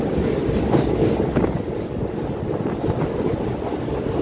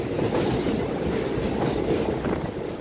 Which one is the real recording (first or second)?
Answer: first